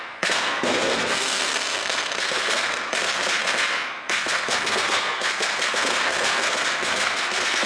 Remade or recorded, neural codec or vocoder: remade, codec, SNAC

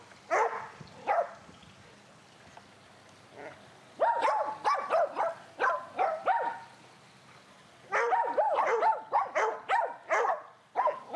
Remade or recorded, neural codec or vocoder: recorded